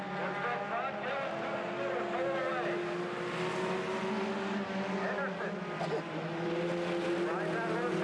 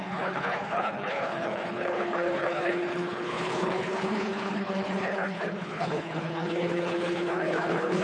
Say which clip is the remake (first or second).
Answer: second